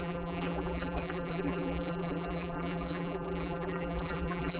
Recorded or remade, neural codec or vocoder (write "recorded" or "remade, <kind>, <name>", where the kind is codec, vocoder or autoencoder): remade, vocoder, BigVGAN v2